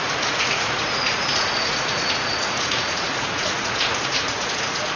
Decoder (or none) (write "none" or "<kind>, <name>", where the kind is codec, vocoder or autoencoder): vocoder, Vocos